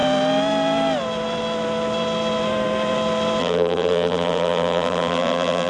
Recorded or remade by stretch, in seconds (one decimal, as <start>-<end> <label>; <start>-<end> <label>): 0.0-3.4 recorded; 3.4-5.7 remade